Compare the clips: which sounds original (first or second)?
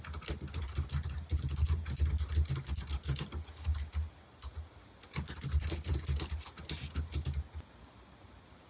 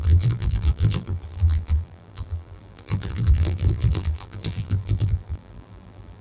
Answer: first